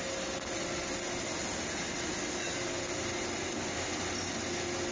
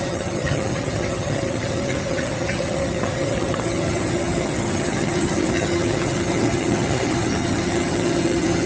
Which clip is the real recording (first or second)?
first